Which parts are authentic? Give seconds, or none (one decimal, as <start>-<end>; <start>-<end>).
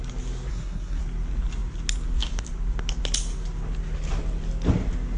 0.0-0.5; 1.0-5.2